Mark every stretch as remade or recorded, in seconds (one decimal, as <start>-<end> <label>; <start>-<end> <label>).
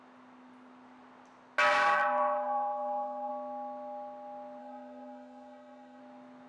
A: 0.0-1.7 recorded; 1.7-3.3 remade; 3.3-4.6 recorded; 4.6-6.0 remade; 6.0-6.5 recorded